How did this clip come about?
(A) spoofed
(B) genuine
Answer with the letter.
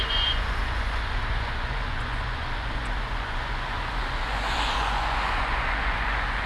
A